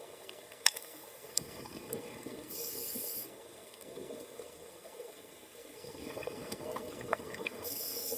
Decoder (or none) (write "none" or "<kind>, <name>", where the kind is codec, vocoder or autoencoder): codec, SNAC